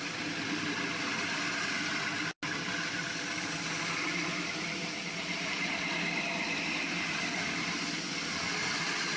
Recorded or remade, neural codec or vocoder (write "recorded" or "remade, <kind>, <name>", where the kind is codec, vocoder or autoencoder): recorded